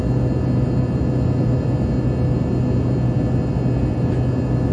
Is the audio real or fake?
real